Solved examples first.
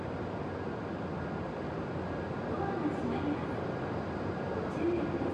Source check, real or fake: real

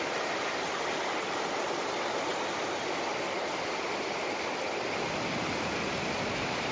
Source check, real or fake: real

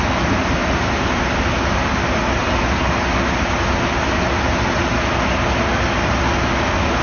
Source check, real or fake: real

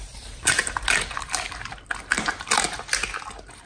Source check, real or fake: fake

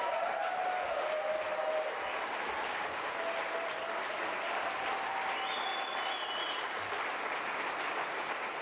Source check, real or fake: real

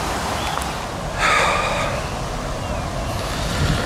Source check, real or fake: real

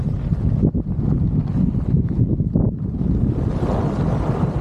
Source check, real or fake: real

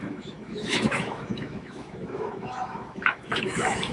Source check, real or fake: fake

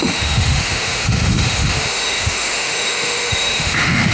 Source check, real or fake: fake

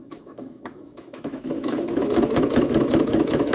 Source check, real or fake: fake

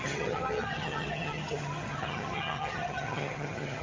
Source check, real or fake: fake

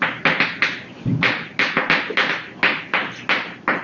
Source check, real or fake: real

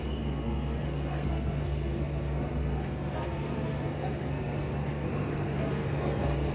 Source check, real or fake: fake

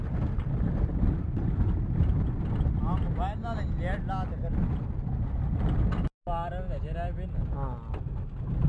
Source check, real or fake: real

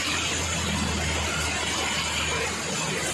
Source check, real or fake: real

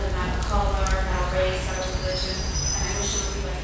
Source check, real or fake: real